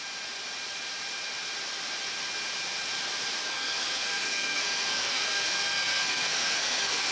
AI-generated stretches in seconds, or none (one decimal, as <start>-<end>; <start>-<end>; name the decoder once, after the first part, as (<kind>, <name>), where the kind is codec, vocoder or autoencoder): 3.4-7.1 (codec, SNAC)